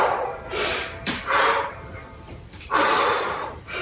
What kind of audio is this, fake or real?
fake